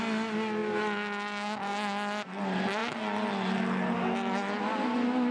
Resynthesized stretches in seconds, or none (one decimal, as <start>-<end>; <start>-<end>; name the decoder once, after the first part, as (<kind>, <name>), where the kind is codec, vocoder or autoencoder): none